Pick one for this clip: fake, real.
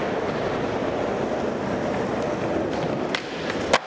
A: real